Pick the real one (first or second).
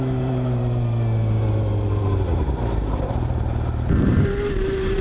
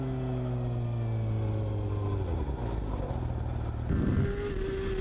second